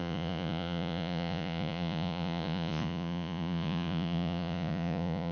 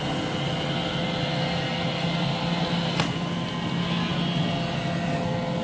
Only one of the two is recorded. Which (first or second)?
second